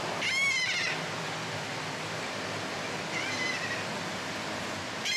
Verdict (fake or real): real